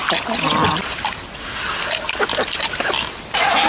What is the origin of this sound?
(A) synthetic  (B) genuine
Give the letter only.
B